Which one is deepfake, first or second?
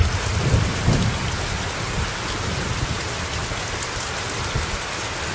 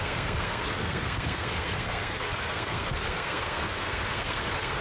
second